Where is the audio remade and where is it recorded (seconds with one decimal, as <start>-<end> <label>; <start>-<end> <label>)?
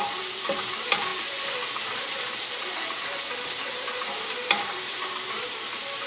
0.0-6.1 remade